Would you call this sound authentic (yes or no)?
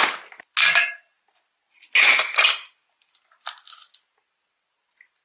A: yes